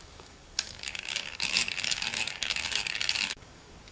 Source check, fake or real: fake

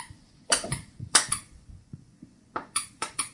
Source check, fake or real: fake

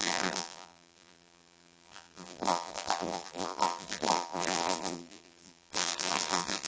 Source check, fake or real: fake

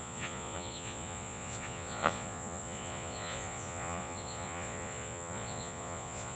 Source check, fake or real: fake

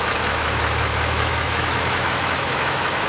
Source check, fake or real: fake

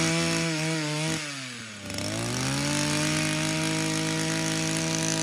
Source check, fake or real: real